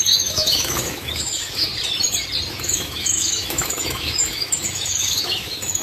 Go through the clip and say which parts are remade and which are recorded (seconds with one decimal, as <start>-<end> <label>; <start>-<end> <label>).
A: 0.0-1.7 remade; 1.7-2.5 recorded; 2.5-5.8 remade